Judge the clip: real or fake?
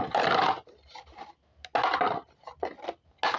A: real